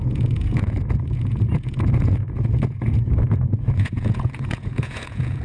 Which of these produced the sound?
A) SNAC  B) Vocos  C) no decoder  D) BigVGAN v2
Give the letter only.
B